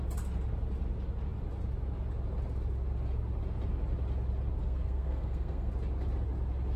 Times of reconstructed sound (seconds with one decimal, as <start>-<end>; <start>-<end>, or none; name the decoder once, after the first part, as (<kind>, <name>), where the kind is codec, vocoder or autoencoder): 4.6-5.7 (codec, SNAC)